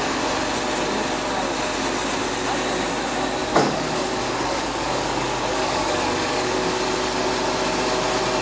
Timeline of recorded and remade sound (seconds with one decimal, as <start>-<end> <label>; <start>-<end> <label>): 0.0-3.4 recorded; 3.4-6.8 remade; 6.8-8.4 recorded

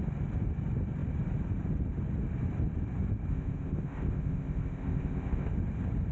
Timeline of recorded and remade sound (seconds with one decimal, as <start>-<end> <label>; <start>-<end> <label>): 0.0-3.3 recorded; 3.3-5.5 remade; 5.5-6.1 recorded

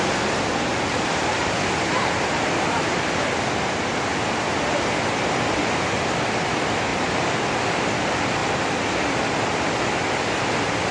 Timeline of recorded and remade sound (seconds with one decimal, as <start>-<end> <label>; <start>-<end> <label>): 0.0-0.7 recorded; 0.7-3.0 remade; 3.0-6.9 recorded; 6.9-7.4 remade; 7.4-10.9 recorded

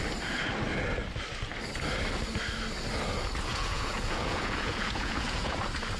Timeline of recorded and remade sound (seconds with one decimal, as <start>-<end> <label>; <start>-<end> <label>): 0.0-3.5 recorded; 3.5-5.6 remade; 5.6-6.0 recorded

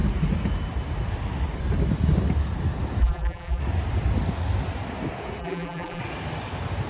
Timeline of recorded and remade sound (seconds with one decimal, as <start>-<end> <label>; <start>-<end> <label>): 0.0-3.0 recorded; 3.0-3.6 remade; 3.6-5.4 recorded; 5.4-6.0 remade; 6.0-6.9 recorded

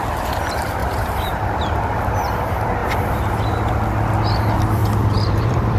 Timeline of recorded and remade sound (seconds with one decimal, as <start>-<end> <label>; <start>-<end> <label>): 0.0-0.8 recorded; 0.8-1.6 remade; 1.6-4.8 recorded; 4.8-5.8 remade